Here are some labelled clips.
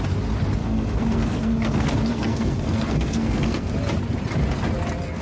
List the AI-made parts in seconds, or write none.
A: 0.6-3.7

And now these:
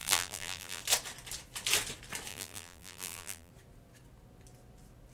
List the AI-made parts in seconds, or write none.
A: 0.0-0.8; 2.3-3.5

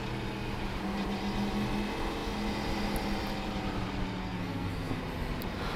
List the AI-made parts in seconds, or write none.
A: 4.2-5.0

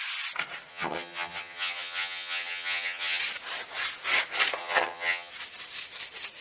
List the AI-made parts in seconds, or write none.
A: 0.7-3.2; 4.6-5.3

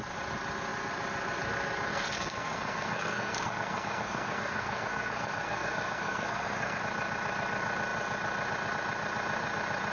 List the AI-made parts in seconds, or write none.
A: 1.9-6.8

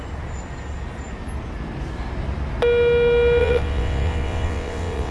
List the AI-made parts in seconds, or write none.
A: 3.4-5.1

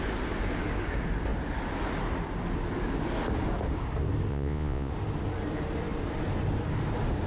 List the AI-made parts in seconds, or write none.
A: 4.3-4.9

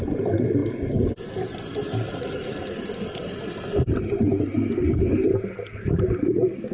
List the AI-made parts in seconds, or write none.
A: none